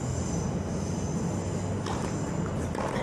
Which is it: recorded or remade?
recorded